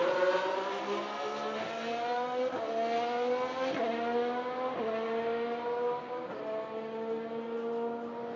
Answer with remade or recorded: recorded